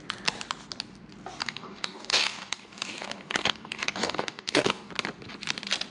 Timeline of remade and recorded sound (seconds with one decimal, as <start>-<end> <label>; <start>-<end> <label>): 0.0-1.4 recorded; 1.4-4.9 remade; 4.9-5.9 recorded